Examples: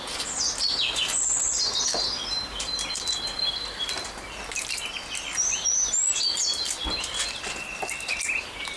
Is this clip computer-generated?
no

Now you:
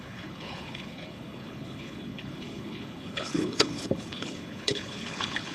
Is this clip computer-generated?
yes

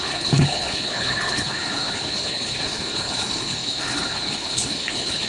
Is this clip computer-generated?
yes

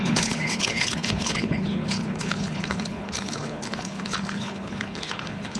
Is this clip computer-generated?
yes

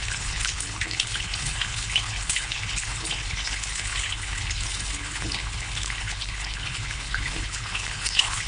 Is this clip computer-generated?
yes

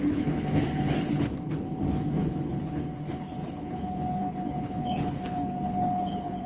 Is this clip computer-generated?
yes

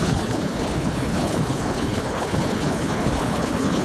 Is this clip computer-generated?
yes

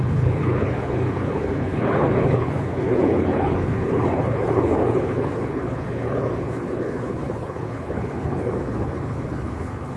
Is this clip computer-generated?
yes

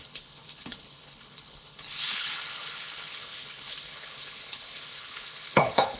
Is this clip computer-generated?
yes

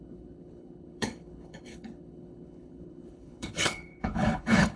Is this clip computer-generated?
yes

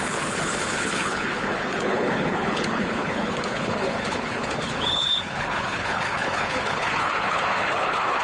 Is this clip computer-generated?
yes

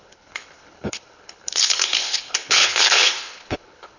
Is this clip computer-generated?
yes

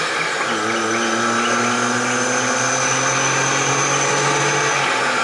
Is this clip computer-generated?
no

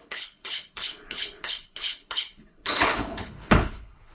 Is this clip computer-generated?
yes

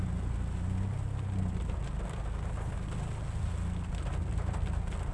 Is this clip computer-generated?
no